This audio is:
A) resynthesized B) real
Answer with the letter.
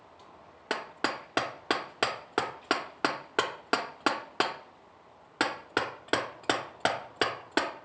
B